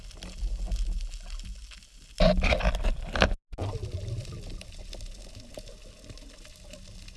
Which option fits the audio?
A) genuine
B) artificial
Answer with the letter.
A